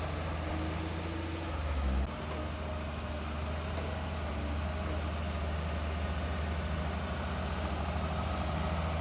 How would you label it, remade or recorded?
recorded